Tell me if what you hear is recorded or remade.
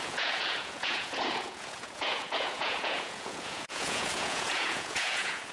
remade